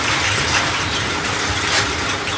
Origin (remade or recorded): recorded